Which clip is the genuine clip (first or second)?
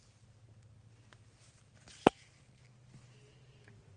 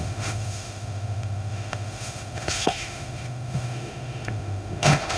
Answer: first